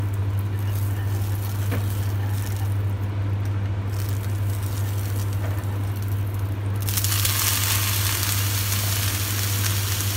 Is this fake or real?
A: real